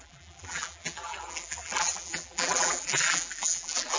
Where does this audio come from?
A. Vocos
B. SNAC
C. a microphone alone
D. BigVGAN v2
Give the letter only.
D